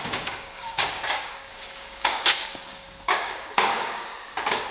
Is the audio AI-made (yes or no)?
yes